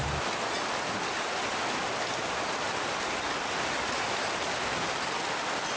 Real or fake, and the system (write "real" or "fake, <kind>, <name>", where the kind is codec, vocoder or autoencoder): real